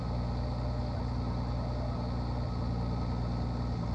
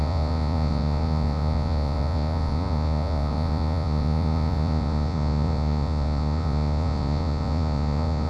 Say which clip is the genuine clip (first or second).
first